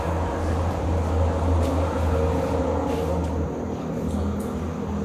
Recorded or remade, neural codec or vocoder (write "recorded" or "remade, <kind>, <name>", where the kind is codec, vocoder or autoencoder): recorded